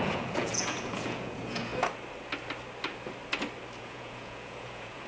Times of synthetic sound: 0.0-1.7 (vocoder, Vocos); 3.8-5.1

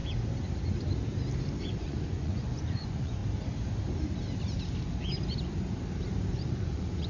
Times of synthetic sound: 1.6-3.2 (vocoder, Vocos); 6.3-7.1

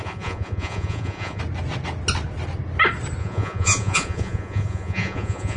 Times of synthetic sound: 0.0-1.4 (vocoder, Vocos); 3.2-5.6